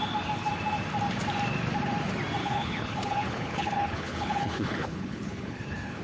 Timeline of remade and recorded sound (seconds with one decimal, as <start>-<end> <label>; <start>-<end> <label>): 0.0-2.4 recorded; 2.4-6.0 remade